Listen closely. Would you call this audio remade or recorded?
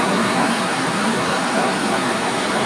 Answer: remade